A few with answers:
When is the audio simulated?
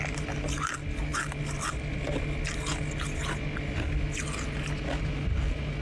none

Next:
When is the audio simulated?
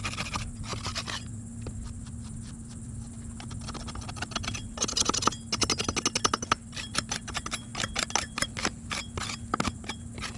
none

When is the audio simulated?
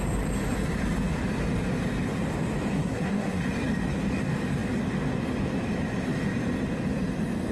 2.7-3.4 (codec, SNAC)